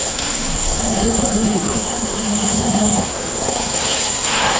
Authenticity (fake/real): fake